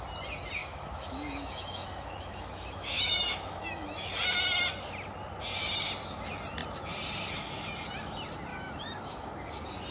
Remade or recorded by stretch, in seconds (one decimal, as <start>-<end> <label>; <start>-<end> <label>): 0.0-0.6 recorded; 0.6-4.1 remade; 4.1-8.5 recorded; 8.5-9.5 remade; 9.5-9.9 recorded